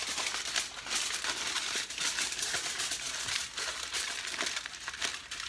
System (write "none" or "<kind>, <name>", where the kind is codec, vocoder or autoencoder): none